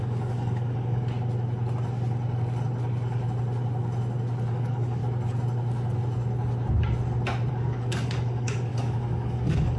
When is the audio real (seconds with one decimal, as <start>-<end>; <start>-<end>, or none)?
1.0-4.5; 5.0-7.5